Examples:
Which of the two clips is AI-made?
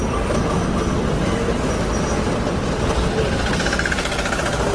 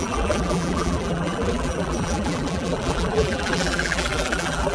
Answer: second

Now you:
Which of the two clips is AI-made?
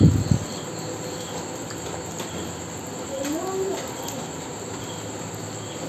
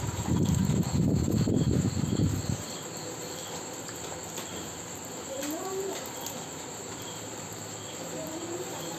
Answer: second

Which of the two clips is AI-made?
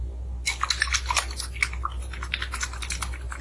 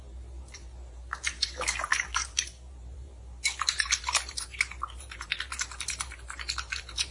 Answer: second